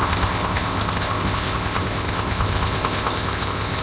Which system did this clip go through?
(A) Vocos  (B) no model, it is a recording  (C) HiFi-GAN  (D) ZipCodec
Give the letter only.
D